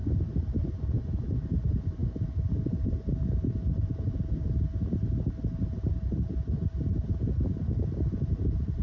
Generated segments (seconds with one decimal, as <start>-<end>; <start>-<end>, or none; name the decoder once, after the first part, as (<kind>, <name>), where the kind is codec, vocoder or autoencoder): none